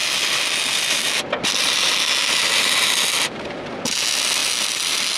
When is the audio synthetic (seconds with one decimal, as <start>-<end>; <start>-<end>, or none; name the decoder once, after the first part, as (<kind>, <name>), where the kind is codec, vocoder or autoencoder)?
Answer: none